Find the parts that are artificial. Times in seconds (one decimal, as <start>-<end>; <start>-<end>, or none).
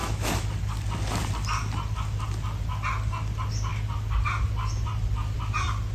0.0-0.5